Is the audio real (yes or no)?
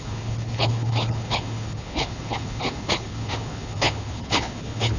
no